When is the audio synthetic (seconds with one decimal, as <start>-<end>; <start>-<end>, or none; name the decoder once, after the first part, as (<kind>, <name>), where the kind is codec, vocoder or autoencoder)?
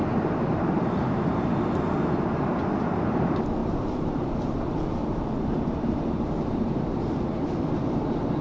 0.0-1.5 (vocoder, BigVGAN v2); 3.6-7.0